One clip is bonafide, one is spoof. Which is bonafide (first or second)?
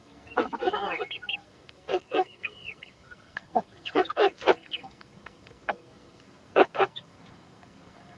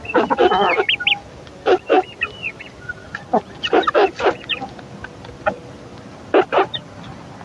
second